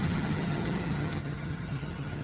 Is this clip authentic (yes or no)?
no